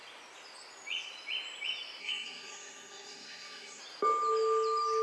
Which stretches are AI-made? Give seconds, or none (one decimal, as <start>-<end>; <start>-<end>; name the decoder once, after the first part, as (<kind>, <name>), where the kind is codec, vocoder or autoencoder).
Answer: 2.0-3.8 (codec, SNAC)